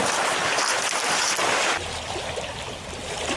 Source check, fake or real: real